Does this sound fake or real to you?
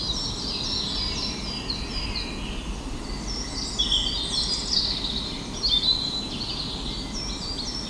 real